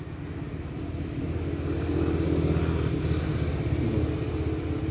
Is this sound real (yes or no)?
yes